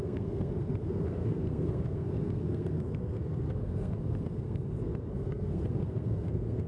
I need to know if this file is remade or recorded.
remade